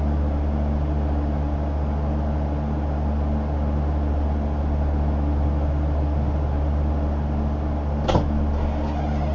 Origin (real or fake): real